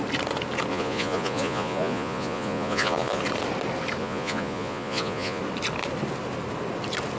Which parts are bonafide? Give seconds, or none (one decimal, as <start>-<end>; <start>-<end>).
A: 0.0-0.7; 3.2-4.0; 5.4-7.2